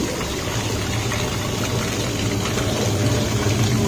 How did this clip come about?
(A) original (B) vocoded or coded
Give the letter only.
A